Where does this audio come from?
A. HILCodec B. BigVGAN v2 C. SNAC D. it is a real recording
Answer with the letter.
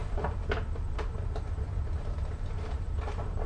B